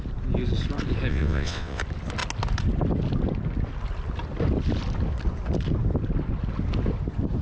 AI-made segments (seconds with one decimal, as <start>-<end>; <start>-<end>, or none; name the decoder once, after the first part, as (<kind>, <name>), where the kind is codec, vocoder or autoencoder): 1.1-1.8 (vocoder, WaveNeXt)